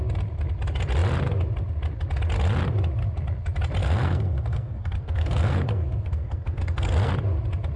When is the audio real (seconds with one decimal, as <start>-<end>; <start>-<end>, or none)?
0.0-3.8; 7.1-7.8